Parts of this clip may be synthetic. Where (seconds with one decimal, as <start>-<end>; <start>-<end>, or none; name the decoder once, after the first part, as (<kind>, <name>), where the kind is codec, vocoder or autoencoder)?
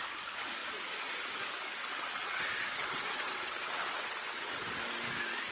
1.9-4.8 (vocoder, WaveNeXt)